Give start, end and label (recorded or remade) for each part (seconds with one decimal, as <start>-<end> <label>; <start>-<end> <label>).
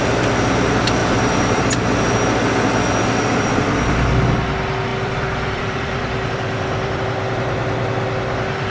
0.0-1.0 recorded; 1.0-1.7 remade; 1.7-4.9 recorded; 4.9-7.0 remade; 7.0-8.7 recorded